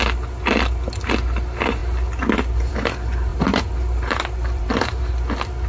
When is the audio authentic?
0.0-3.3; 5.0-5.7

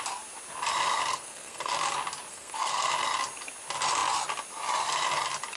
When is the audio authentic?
0.0-1.1; 1.7-2.3; 2.9-5.6

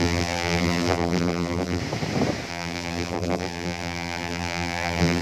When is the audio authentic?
1.8-2.5

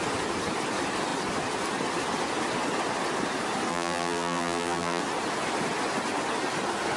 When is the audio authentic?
0.0-3.7; 5.0-7.0

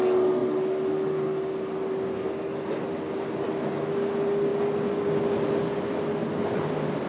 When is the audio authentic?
0.0-7.1

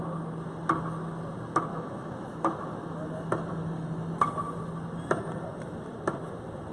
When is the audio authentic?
0.0-1.7; 4.2-6.7

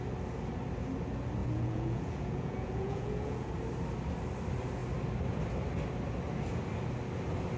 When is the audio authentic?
0.0-1.4; 3.5-7.6